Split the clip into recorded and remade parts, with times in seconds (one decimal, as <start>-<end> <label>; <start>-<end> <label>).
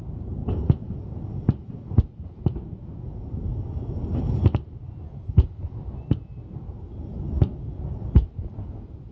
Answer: 0.0-9.1 recorded